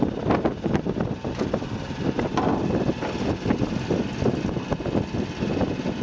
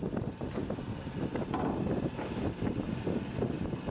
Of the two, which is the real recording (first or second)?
first